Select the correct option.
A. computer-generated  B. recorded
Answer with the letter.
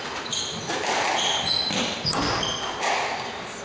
B